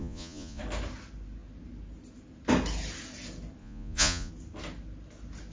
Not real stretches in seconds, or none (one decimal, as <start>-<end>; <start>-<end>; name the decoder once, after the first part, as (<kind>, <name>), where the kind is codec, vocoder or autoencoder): 0.0-0.6 (vocoder, Vocos); 3.6-4.3